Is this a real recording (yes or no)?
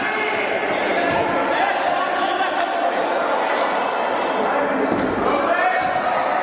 yes